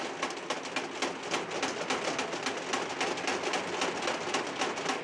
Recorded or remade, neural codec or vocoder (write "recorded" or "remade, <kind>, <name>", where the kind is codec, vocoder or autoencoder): recorded